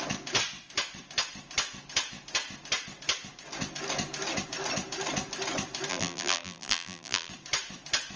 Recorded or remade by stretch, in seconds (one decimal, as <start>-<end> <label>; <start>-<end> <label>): 0.0-5.9 recorded; 5.9-7.3 remade; 7.3-8.2 recorded